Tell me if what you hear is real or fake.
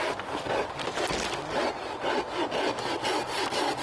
real